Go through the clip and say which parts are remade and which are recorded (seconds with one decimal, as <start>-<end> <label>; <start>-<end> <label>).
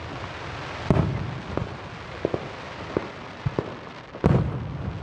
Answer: 0.0-5.0 recorded